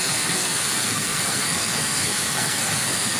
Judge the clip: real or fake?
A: fake